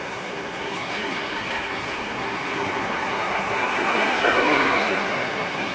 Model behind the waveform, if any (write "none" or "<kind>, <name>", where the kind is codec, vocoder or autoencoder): codec, SNAC